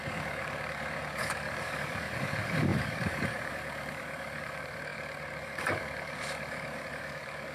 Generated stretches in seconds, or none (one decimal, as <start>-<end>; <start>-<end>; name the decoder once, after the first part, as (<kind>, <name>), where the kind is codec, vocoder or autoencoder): 0.0-7.5 (codec, DAC)